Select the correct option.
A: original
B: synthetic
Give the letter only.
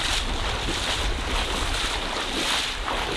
A